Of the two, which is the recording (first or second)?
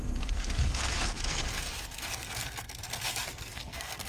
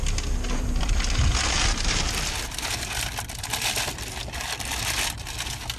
second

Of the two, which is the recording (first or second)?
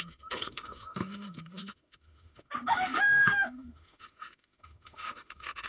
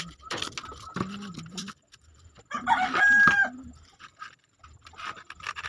second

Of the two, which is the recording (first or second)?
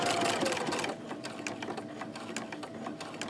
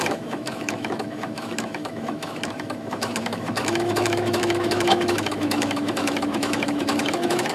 first